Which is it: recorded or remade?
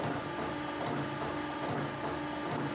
recorded